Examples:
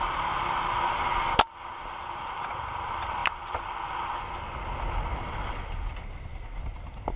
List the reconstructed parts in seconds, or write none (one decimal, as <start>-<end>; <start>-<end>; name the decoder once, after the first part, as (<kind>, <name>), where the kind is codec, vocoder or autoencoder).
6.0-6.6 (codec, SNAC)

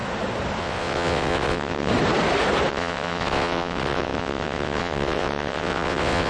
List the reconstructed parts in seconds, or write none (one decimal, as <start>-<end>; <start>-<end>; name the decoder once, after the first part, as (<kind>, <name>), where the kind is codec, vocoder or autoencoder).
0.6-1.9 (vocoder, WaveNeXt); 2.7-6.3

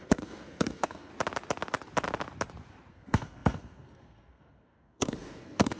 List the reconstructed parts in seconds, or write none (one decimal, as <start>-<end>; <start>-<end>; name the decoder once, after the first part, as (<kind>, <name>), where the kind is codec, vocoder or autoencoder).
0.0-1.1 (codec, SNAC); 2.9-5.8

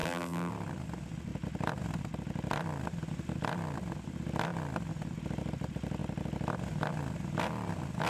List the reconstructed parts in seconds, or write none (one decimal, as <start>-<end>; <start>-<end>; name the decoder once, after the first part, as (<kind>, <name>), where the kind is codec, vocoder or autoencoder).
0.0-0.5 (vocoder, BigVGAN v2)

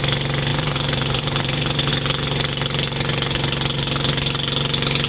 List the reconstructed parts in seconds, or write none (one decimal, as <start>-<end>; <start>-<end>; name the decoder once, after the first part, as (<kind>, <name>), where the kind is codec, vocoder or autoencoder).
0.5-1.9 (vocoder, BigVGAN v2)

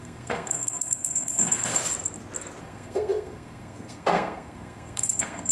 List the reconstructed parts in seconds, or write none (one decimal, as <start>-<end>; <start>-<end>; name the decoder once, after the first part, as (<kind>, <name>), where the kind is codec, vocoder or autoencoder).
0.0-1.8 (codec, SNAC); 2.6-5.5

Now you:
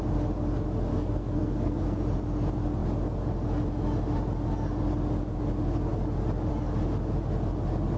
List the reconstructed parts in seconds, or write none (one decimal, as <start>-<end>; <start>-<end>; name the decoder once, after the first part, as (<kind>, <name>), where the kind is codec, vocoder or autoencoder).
0.9-2.0 (codec, SNAC)